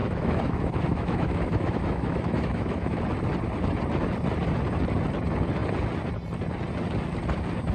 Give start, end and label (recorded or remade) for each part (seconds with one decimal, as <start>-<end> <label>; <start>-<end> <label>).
0.0-3.0 remade; 3.0-7.7 recorded